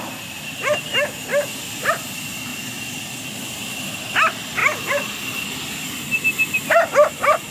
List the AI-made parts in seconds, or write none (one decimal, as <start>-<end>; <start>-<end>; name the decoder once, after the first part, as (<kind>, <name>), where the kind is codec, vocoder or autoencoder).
0.0-1.3 (vocoder, BigVGAN v2); 1.9-2.5; 3.4-7.5

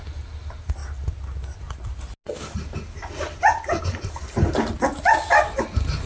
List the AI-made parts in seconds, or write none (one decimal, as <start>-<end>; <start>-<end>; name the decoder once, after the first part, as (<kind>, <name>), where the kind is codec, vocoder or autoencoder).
none